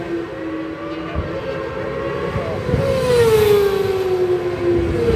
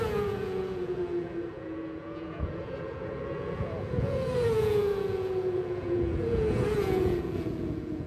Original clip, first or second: first